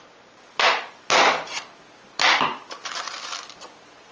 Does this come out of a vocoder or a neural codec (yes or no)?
no